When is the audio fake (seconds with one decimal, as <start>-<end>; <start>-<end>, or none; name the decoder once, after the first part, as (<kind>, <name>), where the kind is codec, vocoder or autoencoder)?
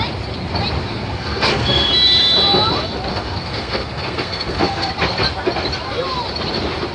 0.9-1.9 (codec, SNAC); 3.1-4.9